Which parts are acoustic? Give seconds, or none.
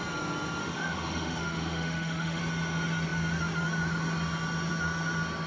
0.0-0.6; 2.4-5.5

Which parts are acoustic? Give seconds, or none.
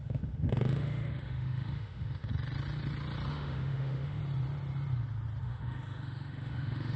2.3-3.3; 4.2-5.4